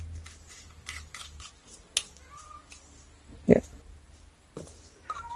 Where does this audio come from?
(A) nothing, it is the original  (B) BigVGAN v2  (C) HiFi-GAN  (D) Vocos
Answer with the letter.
A